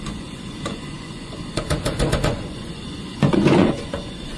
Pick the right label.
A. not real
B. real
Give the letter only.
A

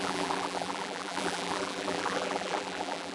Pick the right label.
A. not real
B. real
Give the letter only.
A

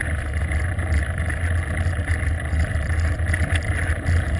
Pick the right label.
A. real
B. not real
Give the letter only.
A